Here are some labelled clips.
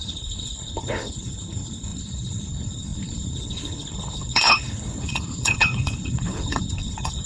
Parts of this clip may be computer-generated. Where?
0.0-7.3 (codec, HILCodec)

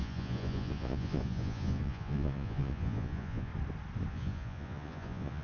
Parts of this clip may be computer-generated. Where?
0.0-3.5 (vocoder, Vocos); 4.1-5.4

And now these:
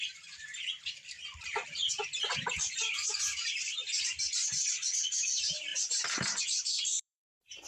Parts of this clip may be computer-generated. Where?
0.0-7.7 (vocoder, BigVGAN v2)

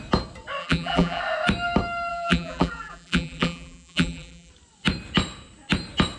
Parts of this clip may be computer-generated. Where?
0.6-1.2 (vocoder, BigVGAN v2); 2.1-4.5